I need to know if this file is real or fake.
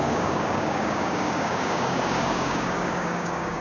fake